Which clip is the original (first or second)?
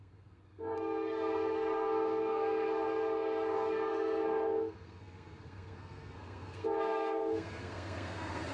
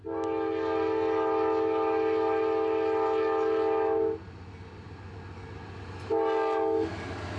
second